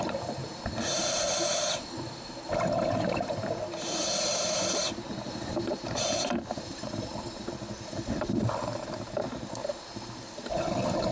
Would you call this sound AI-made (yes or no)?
yes